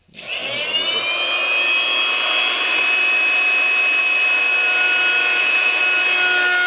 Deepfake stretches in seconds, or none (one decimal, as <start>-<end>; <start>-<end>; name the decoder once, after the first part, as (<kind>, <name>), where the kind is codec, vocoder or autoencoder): 5.2-5.8 (vocoder, Vocos)